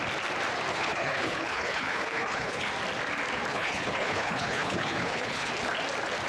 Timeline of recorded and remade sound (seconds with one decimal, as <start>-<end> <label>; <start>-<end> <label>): 0.0-0.7 recorded; 0.7-2.7 remade; 2.7-3.5 recorded; 3.5-5.5 remade; 5.5-6.3 recorded